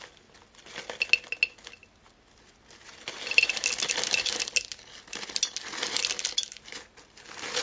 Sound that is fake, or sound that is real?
real